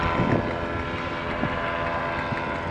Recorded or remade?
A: recorded